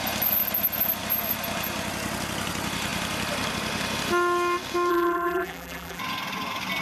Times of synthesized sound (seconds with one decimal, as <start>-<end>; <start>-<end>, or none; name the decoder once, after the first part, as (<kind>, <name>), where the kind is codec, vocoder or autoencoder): 4.9-6.0 (vocoder, BigVGAN v2)